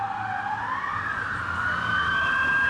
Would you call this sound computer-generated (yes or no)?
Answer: no